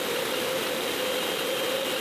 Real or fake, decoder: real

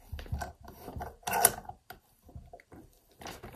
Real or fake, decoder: real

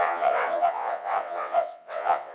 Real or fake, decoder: fake, vocoder, WaveNeXt